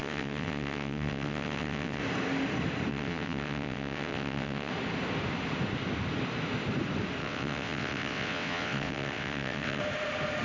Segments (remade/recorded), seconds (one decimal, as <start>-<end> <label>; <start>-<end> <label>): 0.0-2.0 remade; 2.0-2.9 recorded; 2.9-4.7 remade; 4.7-7.2 recorded; 7.2-9.8 remade; 9.8-10.4 recorded